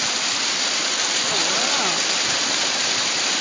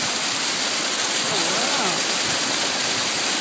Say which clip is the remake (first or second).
first